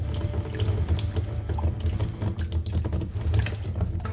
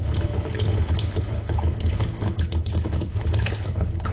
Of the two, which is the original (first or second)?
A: first